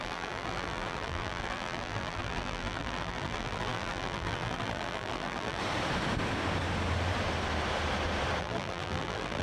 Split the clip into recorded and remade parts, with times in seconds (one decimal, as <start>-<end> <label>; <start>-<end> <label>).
0.0-5.6 remade; 5.6-8.4 recorded; 8.4-9.4 remade